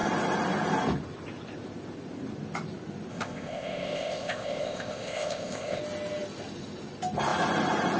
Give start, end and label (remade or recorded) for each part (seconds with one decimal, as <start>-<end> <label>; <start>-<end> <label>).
0.0-3.1 recorded; 3.1-5.8 remade; 5.8-8.0 recorded